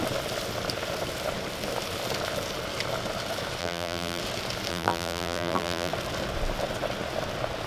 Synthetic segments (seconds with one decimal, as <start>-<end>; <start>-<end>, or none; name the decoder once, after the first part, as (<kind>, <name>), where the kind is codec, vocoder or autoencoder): 3.6-4.2 (vocoder, BigVGAN v2); 4.7-5.9